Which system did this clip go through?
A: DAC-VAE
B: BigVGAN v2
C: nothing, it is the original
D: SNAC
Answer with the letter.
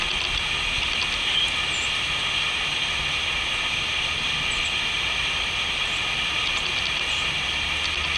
C